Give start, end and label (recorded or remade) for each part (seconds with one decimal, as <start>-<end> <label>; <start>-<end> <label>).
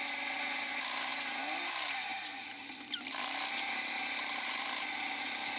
0.0-1.1 remade; 1.1-1.7 recorded; 1.7-5.6 remade